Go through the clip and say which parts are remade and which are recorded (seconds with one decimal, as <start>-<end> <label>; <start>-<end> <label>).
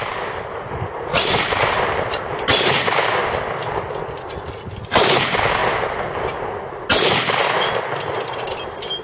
0.0-0.5 recorded; 0.5-1.2 remade; 1.2-9.0 recorded